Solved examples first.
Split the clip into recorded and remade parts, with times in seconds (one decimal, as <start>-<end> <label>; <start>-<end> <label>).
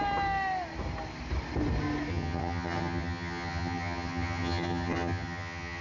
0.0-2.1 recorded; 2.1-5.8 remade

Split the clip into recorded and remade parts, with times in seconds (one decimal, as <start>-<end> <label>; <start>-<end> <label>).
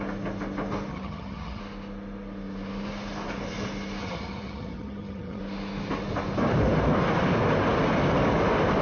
0.0-0.9 recorded; 0.9-1.6 remade; 1.6-4.0 recorded; 4.0-5.4 remade; 5.4-8.8 recorded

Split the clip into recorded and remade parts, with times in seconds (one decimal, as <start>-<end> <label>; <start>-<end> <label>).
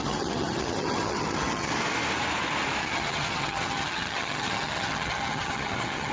0.0-1.7 remade; 1.7-2.8 recorded; 2.8-6.1 remade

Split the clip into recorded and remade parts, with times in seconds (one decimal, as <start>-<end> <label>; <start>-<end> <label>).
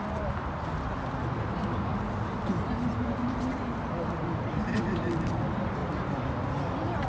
0.0-7.1 recorded